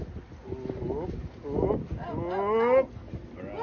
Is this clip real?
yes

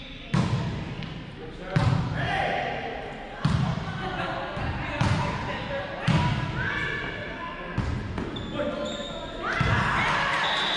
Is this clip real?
yes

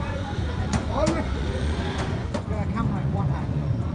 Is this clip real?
no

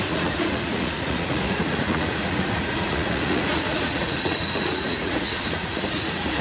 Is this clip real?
no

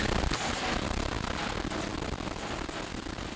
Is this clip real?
yes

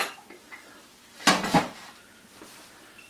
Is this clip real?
yes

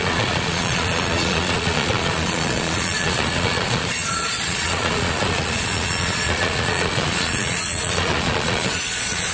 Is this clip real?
no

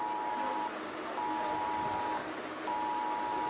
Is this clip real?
yes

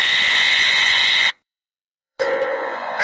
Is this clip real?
no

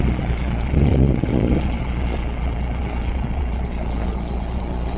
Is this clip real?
no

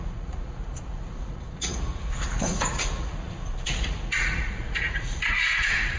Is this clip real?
no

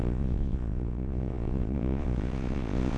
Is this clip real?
no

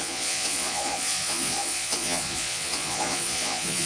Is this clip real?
no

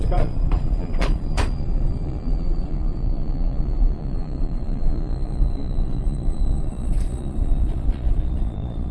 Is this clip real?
no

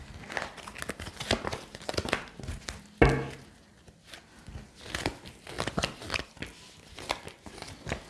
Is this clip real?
yes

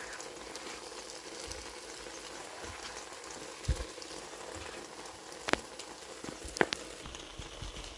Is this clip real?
yes